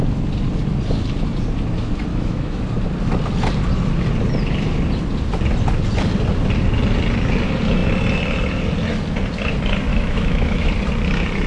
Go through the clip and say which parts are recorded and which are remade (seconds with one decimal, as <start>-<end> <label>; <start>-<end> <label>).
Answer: 0.0-2.1 recorded; 2.1-2.6 remade; 2.6-9.9 recorded; 9.9-10.7 remade; 10.7-11.5 recorded